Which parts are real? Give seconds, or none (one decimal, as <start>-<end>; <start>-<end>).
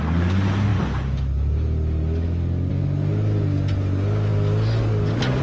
0.0-5.4